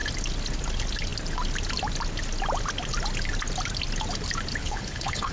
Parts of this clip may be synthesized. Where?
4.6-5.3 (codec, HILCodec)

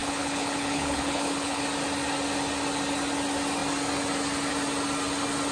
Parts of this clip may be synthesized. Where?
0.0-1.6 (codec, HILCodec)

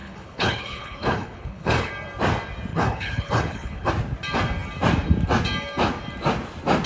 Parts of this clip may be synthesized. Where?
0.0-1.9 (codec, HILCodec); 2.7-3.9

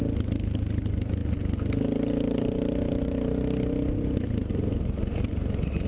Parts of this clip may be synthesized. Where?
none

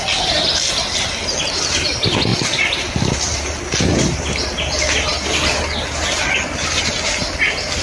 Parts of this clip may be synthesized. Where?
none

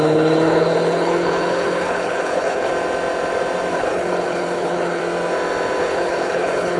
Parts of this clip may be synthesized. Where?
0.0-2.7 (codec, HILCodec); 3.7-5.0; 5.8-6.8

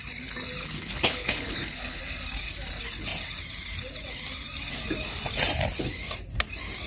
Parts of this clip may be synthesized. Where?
0.6-2.0 (codec, HILCodec)